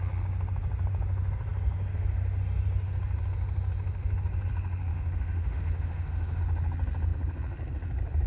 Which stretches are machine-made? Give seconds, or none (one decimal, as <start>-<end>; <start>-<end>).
4.9-6.4